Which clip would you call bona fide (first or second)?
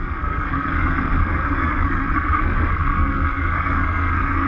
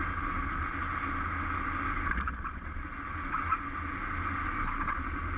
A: second